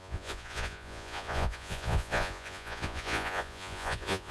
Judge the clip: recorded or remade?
remade